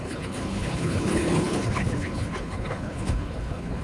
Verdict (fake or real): fake